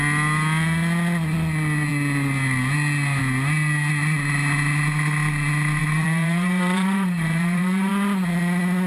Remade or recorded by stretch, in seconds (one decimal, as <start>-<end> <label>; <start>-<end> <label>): 0.0-5.8 recorded; 5.8-7.9 remade; 7.9-8.9 recorded